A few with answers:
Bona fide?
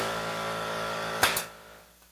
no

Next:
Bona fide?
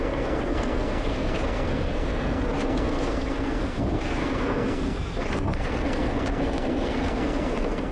no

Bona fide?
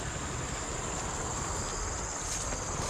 yes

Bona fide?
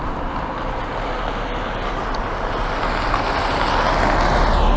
yes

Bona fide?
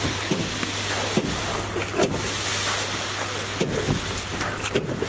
yes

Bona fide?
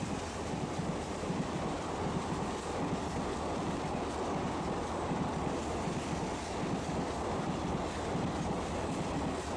no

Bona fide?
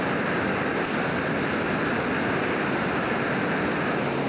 yes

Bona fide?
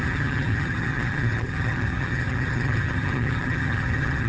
no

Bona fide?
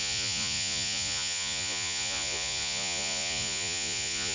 no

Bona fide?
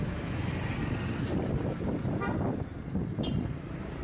yes